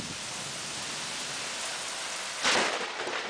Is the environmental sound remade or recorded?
recorded